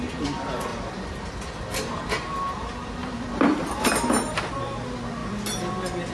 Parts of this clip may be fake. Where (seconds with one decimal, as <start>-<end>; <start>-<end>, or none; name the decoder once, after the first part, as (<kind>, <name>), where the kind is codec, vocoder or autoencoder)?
none